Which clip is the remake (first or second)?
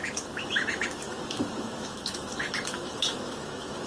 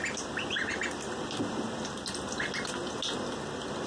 first